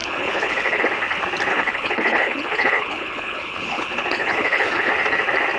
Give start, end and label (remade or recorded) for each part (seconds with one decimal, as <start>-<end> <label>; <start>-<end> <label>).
0.0-0.8 remade; 0.8-1.5 recorded; 1.5-4.9 remade; 4.9-5.6 recorded

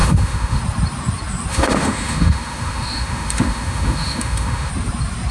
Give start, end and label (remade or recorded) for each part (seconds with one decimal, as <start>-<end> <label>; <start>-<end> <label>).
0.0-0.6 remade; 0.6-1.5 recorded; 1.5-4.7 remade; 4.7-5.3 recorded

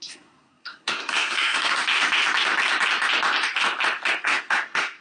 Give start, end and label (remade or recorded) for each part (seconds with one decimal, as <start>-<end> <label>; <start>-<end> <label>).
0.0-1.8 remade; 1.8-4.2 recorded; 4.2-5.0 remade

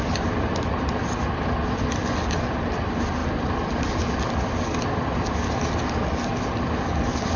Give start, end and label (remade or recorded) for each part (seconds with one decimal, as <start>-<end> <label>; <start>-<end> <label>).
0.0-7.4 recorded